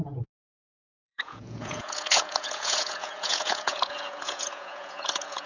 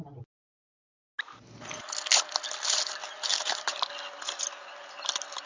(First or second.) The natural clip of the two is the second